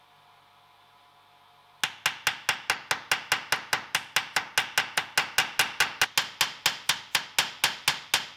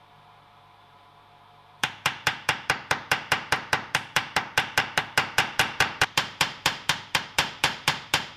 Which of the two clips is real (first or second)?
first